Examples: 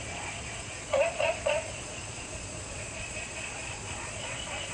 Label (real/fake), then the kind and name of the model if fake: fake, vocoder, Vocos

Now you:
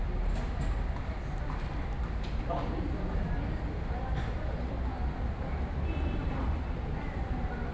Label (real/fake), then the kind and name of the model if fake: real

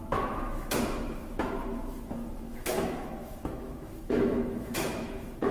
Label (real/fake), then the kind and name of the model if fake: fake, autoencoder, DAC-VAE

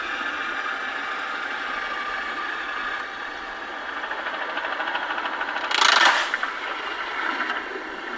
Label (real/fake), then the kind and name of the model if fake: real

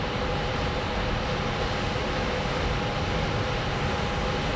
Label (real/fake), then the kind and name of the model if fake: real